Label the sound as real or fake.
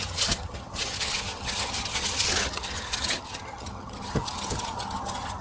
fake